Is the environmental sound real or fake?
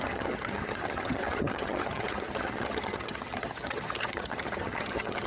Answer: fake